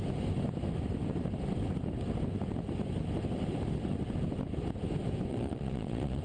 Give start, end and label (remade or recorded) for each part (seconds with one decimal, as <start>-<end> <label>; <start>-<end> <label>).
0.0-5.3 recorded; 5.3-6.2 remade